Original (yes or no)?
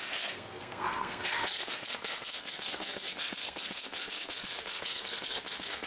no